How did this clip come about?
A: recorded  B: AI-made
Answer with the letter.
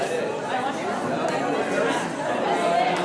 A